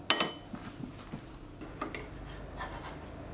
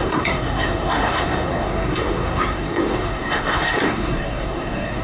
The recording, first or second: first